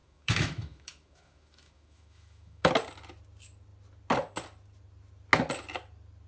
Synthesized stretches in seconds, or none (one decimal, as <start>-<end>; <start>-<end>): 0.0-2.7